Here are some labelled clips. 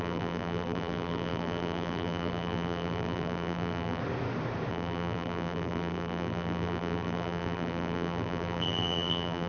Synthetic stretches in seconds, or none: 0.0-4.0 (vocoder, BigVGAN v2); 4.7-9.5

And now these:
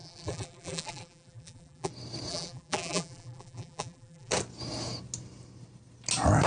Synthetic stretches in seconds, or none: 0.0-1.9 (vocoder, BigVGAN v2); 2.3-4.3

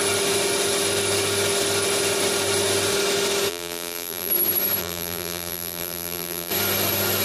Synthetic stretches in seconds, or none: 3.5-4.3 (vocoder, BigVGAN v2); 4.8-6.5

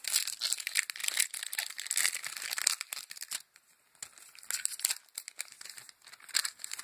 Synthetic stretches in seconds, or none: none